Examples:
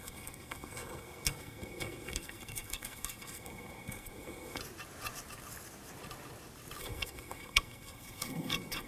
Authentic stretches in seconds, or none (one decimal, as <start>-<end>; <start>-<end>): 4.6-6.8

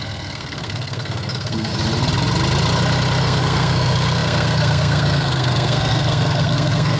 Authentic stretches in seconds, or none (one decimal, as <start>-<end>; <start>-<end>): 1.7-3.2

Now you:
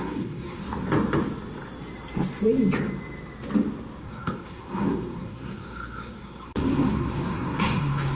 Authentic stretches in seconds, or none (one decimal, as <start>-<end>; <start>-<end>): 0.6-4.0

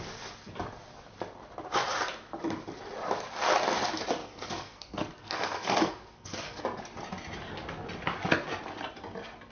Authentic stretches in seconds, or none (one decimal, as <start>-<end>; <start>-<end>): 0.0-4.2; 6.6-9.5